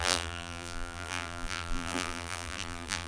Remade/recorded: remade